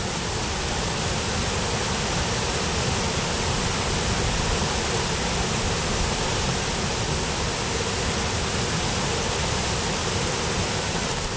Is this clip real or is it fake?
real